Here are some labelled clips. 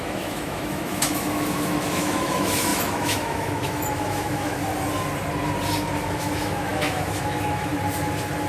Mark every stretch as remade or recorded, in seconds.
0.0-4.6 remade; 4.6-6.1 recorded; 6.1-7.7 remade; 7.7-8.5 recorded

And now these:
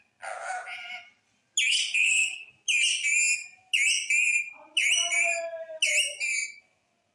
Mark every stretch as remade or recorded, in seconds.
0.0-2.0 recorded; 2.0-2.5 remade; 2.5-7.1 recorded

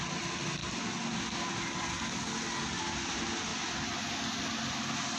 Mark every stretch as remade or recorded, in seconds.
0.0-0.6 recorded; 0.6-1.2 remade; 1.2-5.2 recorded

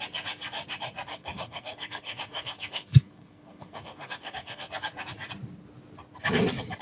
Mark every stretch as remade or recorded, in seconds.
0.0-1.1 recorded; 1.1-4.7 remade; 4.7-6.8 recorded

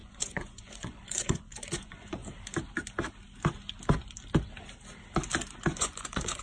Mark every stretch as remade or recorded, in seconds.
0.0-2.2 remade; 2.2-5.8 recorded; 5.8-6.4 remade